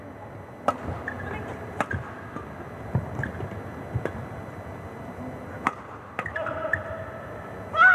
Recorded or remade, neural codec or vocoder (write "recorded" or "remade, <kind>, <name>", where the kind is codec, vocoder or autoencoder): recorded